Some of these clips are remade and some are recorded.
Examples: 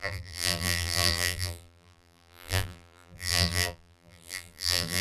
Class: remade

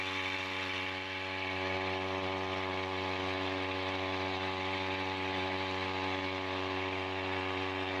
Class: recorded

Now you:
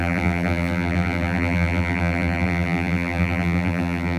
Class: remade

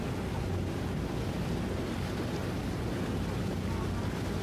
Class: recorded